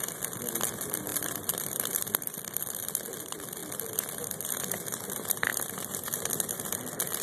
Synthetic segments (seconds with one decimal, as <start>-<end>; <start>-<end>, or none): 1.1-2.4; 5.5-6.3